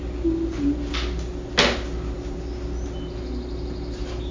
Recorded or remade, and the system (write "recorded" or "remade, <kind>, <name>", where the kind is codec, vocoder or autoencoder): recorded